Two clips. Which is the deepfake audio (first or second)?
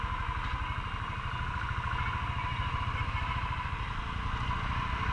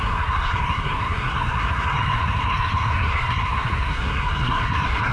second